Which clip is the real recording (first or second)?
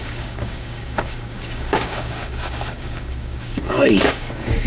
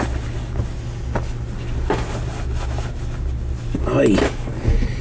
second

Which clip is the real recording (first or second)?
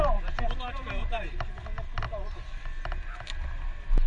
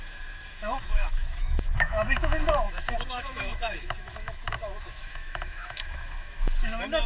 first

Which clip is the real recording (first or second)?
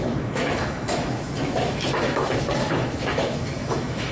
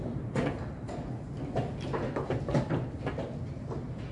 second